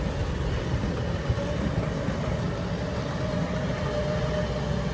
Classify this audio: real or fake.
real